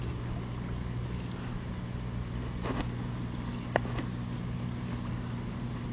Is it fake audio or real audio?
real